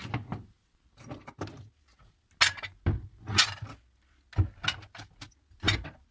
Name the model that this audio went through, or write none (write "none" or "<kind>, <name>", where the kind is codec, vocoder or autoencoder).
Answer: none